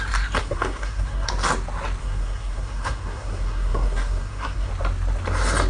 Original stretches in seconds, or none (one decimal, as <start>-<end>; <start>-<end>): 0.0-0.4; 1.3-2.0; 4.7-5.7